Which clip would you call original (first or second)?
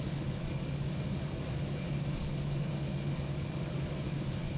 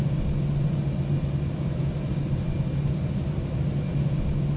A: second